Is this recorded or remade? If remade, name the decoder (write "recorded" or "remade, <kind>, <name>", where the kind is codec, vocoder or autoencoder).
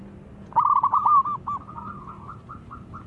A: recorded